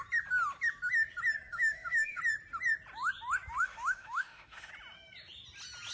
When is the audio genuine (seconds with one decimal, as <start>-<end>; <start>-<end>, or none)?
0.0-1.5; 2.2-3.6; 4.7-5.9